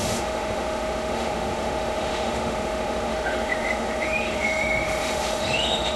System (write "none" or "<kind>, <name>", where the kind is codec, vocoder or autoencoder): autoencoder, DAC-VAE